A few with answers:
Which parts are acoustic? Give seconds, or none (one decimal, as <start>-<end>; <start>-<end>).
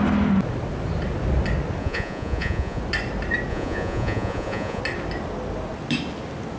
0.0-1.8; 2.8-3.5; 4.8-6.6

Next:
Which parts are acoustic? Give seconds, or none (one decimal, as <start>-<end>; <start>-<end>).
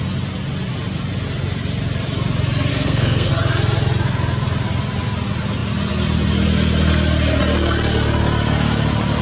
0.0-2.7; 3.3-9.2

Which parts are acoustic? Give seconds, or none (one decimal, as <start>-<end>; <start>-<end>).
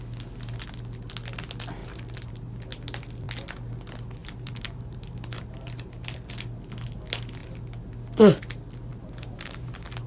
0.0-1.8; 2.3-4.2; 6.3-8.9